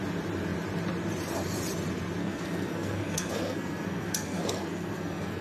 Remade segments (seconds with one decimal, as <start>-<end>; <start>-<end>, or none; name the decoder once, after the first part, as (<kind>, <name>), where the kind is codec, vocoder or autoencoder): 2.2-5.4 (codec, SNAC)